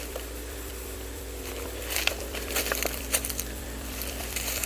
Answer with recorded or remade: remade